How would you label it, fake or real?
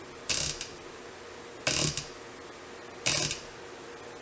real